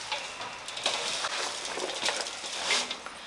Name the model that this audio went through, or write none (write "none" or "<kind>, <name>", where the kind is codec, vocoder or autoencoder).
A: none